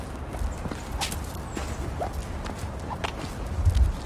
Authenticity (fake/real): real